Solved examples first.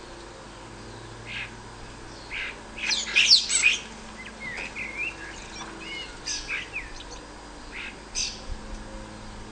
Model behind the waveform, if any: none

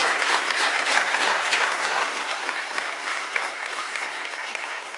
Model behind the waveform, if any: codec, SNAC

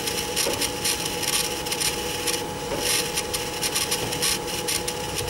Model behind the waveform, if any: none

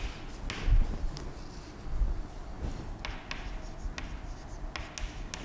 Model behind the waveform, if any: none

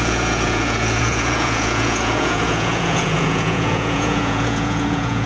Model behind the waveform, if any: vocoder, Vocos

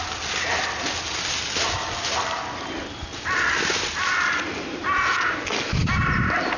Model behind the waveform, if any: none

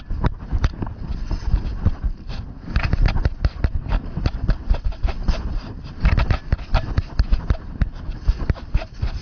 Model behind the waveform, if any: vocoder, BigVGAN v2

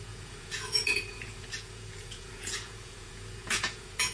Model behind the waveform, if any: vocoder, Vocos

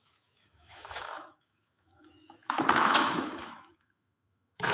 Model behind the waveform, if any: autoencoder, DAC-VAE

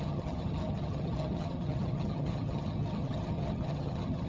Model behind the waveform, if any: vocoder, HiFi-GAN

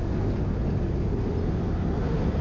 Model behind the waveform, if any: none